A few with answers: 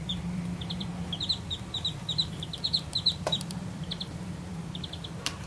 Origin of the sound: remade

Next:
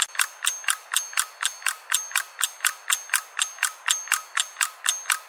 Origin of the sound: recorded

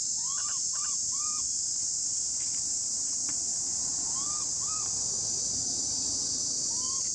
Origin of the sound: remade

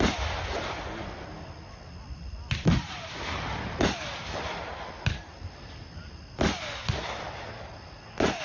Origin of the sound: recorded